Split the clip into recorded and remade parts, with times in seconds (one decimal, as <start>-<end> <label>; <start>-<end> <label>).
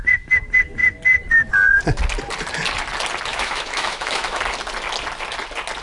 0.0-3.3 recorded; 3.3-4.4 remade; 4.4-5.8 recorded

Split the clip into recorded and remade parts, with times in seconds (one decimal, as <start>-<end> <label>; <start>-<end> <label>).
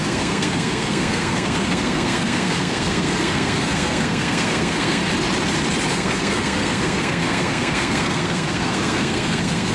0.0-5.0 remade; 5.0-5.9 recorded; 5.9-9.7 remade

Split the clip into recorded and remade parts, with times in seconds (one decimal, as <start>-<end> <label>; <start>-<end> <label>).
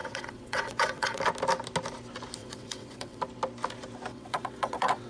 0.0-1.2 remade; 1.2-2.4 recorded; 2.4-3.2 remade; 3.2-4.1 recorded; 4.1-5.1 remade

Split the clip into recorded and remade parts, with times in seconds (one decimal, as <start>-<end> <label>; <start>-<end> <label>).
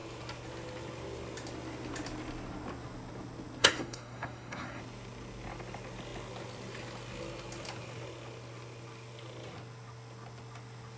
0.0-3.6 recorded; 3.6-4.8 remade; 4.8-11.0 recorded